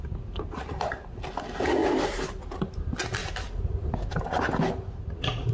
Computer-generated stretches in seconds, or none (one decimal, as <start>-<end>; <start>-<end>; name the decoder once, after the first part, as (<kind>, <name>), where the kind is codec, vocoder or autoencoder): 1.8-2.6 (vocoder, BigVGAN v2); 3.2-4.6